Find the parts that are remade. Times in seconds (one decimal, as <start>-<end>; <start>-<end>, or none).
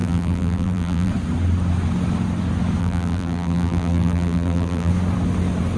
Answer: 0.0-1.1; 2.8-4.9